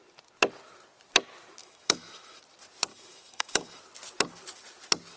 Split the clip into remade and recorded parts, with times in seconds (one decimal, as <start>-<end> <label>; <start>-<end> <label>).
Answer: 0.0-1.6 recorded; 1.6-2.4 remade; 2.4-2.9 recorded; 2.9-3.8 remade; 3.8-5.2 recorded